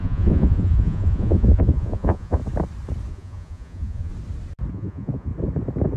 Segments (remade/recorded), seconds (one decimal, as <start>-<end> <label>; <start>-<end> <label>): 0.0-2.4 remade; 2.4-3.1 recorded; 3.1-4.1 remade; 4.1-4.7 recorded; 4.7-5.3 remade; 5.3-6.0 recorded